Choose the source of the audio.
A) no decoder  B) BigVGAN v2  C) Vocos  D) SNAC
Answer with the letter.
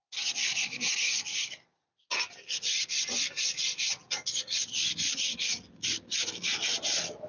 A